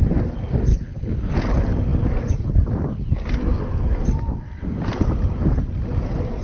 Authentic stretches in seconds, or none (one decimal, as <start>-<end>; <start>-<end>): 0.0-0.7; 1.3-6.4